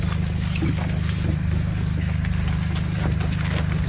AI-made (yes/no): no